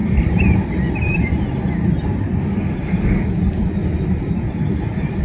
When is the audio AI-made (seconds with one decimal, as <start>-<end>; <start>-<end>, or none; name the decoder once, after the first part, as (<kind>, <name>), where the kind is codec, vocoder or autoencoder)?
0.0-1.3 (vocoder, BigVGAN v2); 3.2-5.2